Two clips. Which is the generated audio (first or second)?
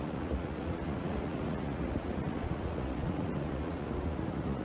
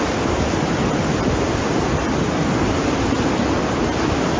first